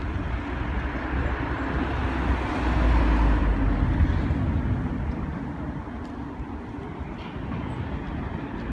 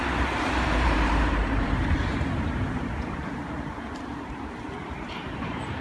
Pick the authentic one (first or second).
first